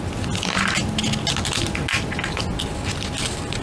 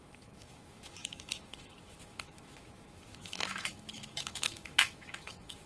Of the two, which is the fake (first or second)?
second